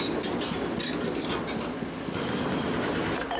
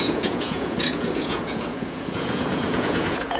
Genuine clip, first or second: first